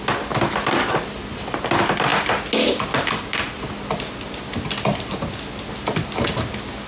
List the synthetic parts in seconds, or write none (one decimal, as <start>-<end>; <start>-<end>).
none